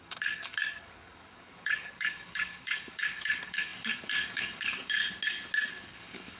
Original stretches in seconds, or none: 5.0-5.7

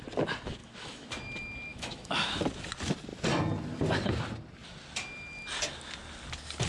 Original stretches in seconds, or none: 0.0-0.6; 1.1-1.7; 2.4-6.7

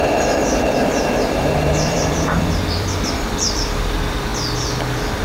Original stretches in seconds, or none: 4.3-5.2

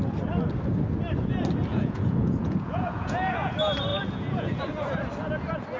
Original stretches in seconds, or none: 0.0-1.7; 3.5-3.9; 4.6-5.8

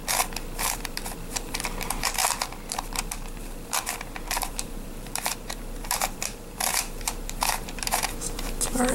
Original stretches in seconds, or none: 0.0-0.6; 2.2-2.7

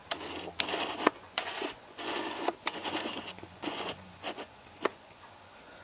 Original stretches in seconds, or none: 0.0-0.9